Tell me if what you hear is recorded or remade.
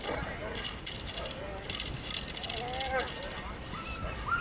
recorded